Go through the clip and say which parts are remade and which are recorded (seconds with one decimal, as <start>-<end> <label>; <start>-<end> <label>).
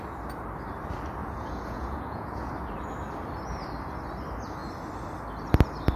0.0-1.2 recorded; 1.2-2.5 remade; 2.5-6.0 recorded